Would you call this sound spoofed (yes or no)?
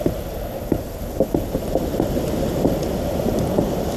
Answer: yes